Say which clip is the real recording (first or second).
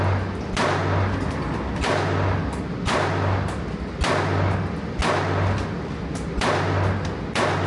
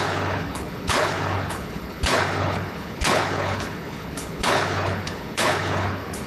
first